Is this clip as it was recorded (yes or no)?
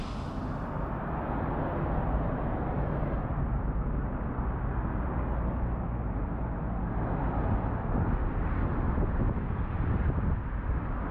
yes